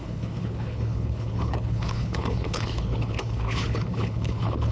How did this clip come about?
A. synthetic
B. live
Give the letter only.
A